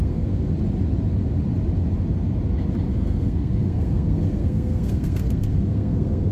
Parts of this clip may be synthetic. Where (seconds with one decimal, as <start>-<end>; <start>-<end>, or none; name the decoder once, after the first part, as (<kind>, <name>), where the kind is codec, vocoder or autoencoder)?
0.0-0.5 (codec, SNAC); 2.9-6.3